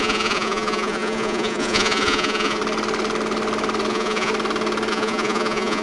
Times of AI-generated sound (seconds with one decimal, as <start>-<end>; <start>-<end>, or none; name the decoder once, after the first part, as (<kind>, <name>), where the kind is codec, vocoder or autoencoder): 0.0-2.6 (vocoder, Vocos); 3.9-4.3; 4.9-5.8

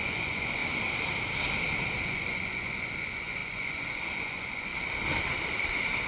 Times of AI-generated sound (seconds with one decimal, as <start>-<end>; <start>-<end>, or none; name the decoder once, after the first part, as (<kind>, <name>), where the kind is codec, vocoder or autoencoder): 0.0-0.6 (vocoder, Vocos); 2.0-4.7

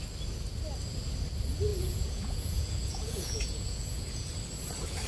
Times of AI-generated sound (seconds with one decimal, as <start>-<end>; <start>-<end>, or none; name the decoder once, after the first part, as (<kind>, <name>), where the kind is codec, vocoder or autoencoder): 1.7-4.3 (vocoder, Vocos)

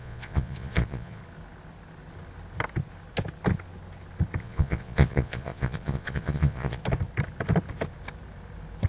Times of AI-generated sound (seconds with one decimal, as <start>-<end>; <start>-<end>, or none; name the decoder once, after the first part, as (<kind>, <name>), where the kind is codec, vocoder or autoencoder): 0.0-1.2 (vocoder, Vocos); 4.4-6.8

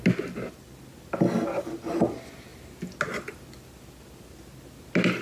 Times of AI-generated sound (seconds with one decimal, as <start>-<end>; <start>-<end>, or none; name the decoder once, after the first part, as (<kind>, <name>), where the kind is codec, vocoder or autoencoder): none